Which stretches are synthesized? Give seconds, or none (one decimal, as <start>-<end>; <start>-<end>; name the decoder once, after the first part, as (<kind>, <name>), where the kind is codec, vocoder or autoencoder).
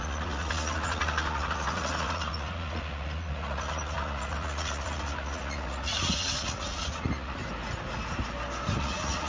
0.0-7.4 (vocoder, Vocos); 8.8-9.3